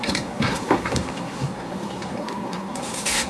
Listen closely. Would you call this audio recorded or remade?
remade